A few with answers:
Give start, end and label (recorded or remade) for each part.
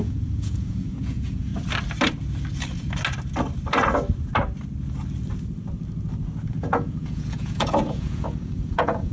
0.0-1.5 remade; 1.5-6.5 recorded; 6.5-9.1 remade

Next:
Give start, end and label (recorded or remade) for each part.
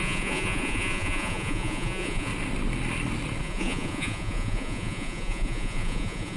0.0-2.3 remade; 2.3-3.4 recorded; 3.4-6.4 remade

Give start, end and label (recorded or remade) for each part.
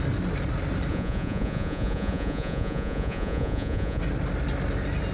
0.0-0.9 recorded; 0.9-4.0 remade; 4.0-5.1 recorded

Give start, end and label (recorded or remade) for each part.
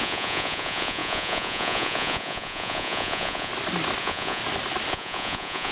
0.0-3.5 remade; 3.5-4.0 recorded; 4.0-4.4 remade; 4.4-4.9 recorded; 4.9-5.7 remade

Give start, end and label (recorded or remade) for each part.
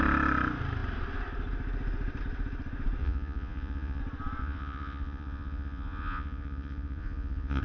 0.0-3.0 recorded; 3.0-4.0 remade; 4.0-4.4 recorded; 4.4-7.6 remade